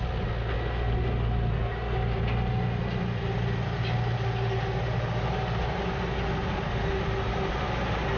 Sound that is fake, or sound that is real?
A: real